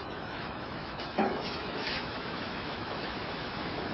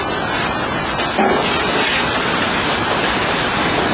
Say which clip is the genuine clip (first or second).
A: second